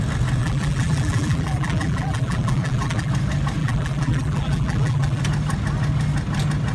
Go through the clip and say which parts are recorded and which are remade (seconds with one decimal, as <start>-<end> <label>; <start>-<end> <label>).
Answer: 0.0-0.4 recorded; 0.4-3.1 remade; 3.1-3.6 recorded; 3.6-5.2 remade; 5.2-6.7 recorded